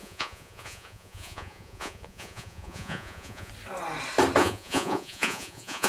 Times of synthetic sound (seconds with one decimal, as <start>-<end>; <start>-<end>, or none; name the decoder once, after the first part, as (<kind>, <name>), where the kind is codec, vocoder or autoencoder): 0.0-3.5 (vocoder, Vocos); 4.4-5.9